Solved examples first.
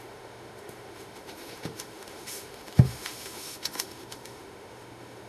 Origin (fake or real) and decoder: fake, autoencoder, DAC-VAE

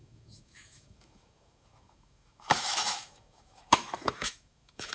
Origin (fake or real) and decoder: fake, autoencoder, DAC-VAE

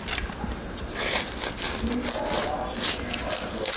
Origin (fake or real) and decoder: real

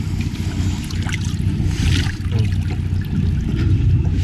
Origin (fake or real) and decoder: real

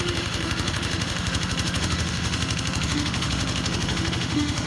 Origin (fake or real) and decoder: fake, autoencoder, DAC-VAE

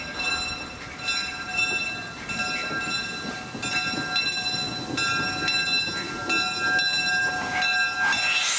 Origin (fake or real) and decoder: real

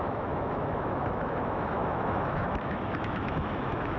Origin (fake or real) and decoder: fake, autoencoder, DAC-VAE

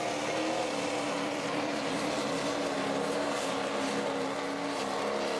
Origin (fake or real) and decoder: real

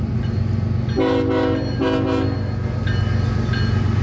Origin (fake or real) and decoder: real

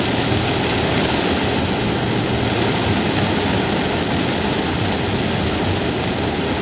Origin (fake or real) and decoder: real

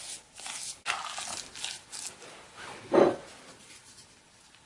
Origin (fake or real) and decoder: real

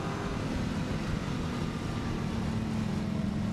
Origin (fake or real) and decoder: real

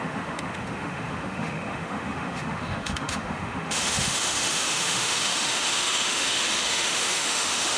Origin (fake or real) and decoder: fake, autoencoder, DAC-VAE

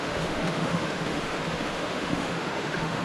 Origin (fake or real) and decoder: fake, autoencoder, DAC-VAE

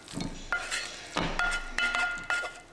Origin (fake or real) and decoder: real